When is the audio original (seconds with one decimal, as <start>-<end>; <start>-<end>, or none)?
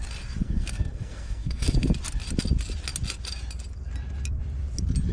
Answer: 0.0-0.4; 1.9-5.1